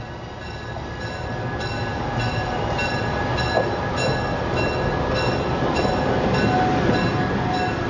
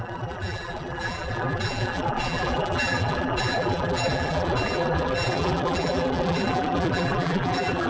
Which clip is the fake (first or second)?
second